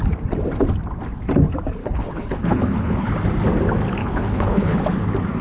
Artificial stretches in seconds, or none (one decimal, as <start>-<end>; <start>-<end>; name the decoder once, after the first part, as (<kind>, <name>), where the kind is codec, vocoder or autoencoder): 1.8-3.1 (codec, HILCodec); 4.0-4.8